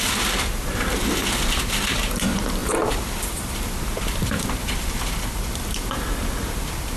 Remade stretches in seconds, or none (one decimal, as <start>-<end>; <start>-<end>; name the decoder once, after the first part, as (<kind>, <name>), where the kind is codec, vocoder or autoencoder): 0.0-1.2 (vocoder, BigVGAN v2); 1.7-7.0